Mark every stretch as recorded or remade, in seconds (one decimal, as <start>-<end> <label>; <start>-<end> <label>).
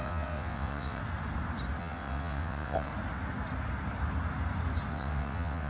0.0-1.0 remade; 1.0-1.8 recorded; 1.8-2.9 remade; 2.9-4.9 recorded; 4.9-5.7 remade